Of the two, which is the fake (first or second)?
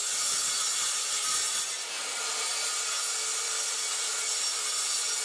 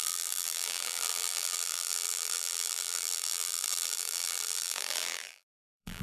second